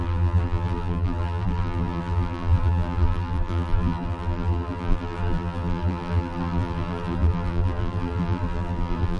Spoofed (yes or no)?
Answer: yes